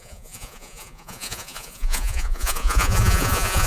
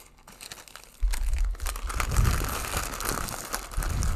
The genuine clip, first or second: second